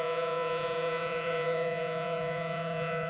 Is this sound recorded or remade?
remade